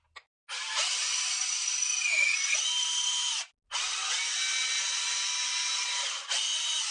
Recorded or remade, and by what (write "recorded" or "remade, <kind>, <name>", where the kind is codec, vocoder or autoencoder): recorded